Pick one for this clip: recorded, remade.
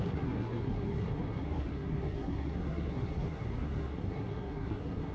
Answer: remade